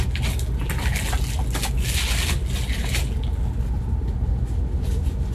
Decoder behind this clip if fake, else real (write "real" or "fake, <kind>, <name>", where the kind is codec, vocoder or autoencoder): real